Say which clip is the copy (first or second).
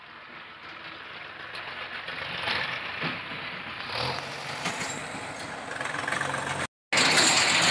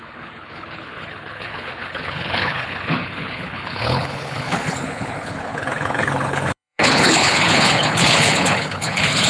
second